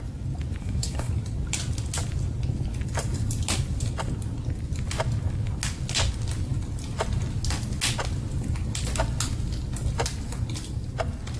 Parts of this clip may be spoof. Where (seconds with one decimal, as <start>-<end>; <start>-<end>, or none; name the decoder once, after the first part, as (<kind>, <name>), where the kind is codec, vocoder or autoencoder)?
0.6-1.1 (codec, SNAC)